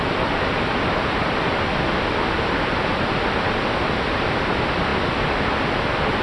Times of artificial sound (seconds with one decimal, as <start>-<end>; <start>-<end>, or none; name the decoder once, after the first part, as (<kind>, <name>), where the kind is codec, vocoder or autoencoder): none